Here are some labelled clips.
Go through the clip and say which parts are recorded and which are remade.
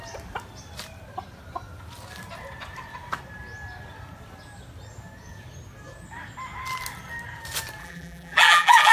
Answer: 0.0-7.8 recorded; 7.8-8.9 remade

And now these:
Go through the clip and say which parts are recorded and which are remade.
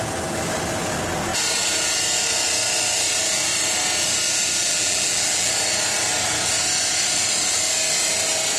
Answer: 0.0-4.7 recorded; 4.7-5.5 remade; 5.5-8.6 recorded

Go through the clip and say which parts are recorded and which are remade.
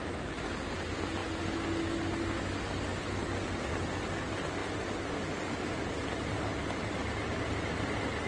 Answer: 0.0-8.3 recorded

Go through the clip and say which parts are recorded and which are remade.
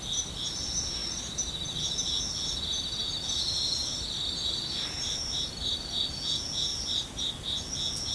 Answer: 0.0-3.0 recorded; 3.0-5.7 remade; 5.7-6.7 recorded; 6.7-7.3 remade; 7.3-8.1 recorded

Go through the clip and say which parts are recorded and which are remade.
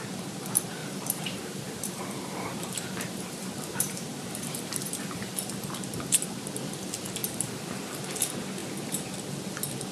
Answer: 0.0-0.8 recorded; 0.8-5.7 remade; 5.7-7.2 recorded; 7.2-8.0 remade; 8.0-9.9 recorded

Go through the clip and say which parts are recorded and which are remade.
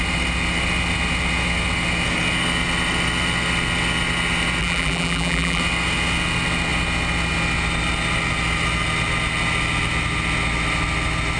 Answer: 0.0-4.6 recorded; 4.6-5.6 remade; 5.6-11.4 recorded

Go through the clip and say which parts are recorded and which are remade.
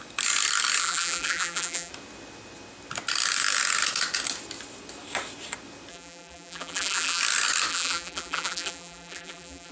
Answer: 0.0-0.8 recorded; 0.8-1.9 remade; 1.9-5.9 recorded; 5.9-7.2 remade; 7.2-7.7 recorded; 7.7-9.7 remade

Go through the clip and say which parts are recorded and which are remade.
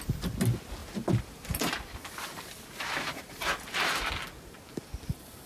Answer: 0.0-0.8 recorded; 0.8-4.1 remade; 4.1-5.5 recorded